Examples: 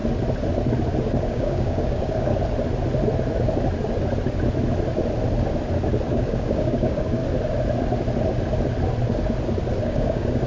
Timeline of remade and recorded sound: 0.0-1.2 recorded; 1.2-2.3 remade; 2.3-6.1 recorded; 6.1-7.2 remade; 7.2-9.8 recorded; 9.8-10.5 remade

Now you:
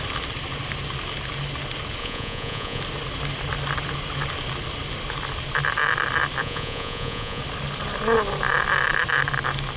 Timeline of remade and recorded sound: 0.0-2.0 recorded; 2.0-2.8 remade; 2.8-6.4 recorded; 6.4-7.4 remade; 7.4-9.8 recorded

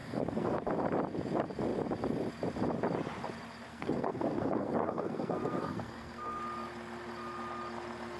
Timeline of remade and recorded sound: 0.0-0.7 remade; 0.7-3.7 recorded; 3.7-6.4 remade; 6.4-8.2 recorded

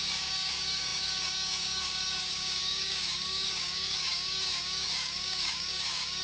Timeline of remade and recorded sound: 0.0-6.2 remade

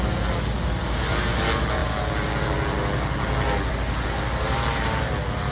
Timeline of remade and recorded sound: 0.0-5.5 recorded

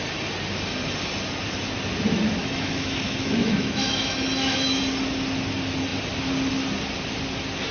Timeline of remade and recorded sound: 0.0-2.4 recorded; 2.4-4.8 remade; 4.8-7.7 recorded

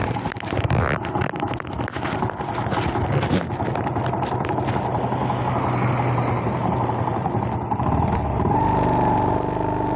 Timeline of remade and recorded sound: 0.0-10.0 recorded